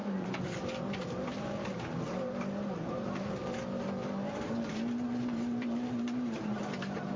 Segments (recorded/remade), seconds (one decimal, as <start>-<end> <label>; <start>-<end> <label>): 0.0-7.2 remade